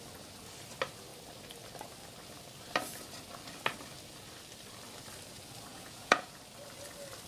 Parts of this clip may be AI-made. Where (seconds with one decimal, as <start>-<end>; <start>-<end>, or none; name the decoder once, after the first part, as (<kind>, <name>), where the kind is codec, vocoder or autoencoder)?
5.7-6.4 (vocoder, Vocos)